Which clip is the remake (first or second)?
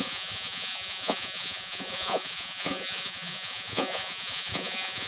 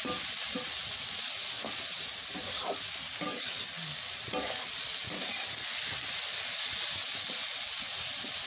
first